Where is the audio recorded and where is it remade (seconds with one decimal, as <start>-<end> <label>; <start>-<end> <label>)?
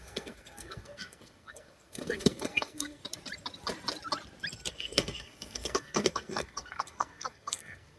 0.0-3.0 remade; 3.0-4.7 recorded; 4.7-8.0 remade